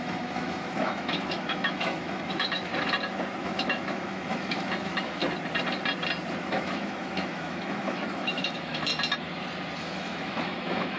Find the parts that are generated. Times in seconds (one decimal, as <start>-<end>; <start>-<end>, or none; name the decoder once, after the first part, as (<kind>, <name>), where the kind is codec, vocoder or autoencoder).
0.0-2.7 (autoencoder, DAC-VAE); 3.4-5.2; 6.4-8.9; 9.8-11.0